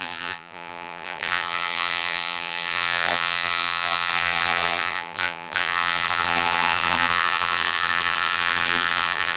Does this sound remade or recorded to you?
remade